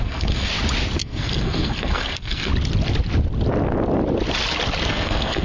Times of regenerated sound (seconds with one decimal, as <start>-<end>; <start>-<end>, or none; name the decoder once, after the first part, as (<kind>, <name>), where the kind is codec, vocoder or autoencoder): 0.0-0.5 (codec, SNAC); 1.0-2.5; 4.9-5.4

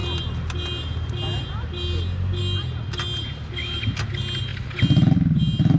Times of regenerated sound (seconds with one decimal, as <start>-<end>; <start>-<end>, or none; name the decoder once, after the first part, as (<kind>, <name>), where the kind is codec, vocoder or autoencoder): none

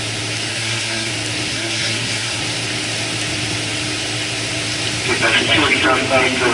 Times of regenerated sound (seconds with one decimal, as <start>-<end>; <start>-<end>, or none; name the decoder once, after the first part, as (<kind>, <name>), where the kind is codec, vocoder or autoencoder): 0.5-1.1 (codec, SNAC); 1.5-2.4

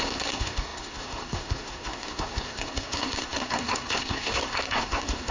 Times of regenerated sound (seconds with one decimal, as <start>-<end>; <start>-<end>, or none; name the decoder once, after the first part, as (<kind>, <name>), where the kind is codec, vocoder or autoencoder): 0.0-5.3 (codec, SNAC)

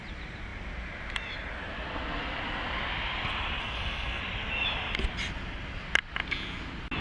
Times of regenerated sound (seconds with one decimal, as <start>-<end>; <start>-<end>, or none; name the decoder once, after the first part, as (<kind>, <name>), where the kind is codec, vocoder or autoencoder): 3.6-4.2 (codec, SNAC)

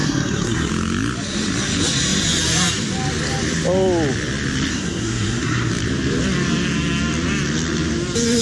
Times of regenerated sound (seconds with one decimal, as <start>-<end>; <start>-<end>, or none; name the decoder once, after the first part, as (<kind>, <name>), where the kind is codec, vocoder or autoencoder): 0.0-0.7 (codec, SNAC); 4.7-5.7

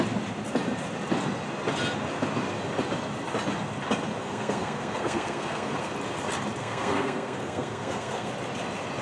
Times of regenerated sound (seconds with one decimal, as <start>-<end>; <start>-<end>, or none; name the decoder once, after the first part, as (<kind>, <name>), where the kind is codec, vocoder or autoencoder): 4.2-5.9 (codec, SNAC); 6.6-8.3